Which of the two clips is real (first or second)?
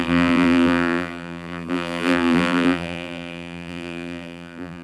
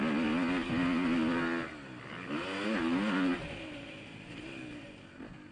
second